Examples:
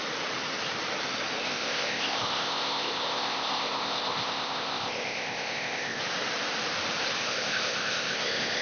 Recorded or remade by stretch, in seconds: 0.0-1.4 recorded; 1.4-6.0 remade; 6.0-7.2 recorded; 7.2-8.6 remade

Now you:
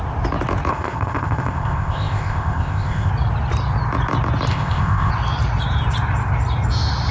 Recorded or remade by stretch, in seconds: 0.0-0.7 recorded; 0.7-3.1 remade; 3.1-4.5 recorded; 4.5-5.1 remade; 5.1-7.1 recorded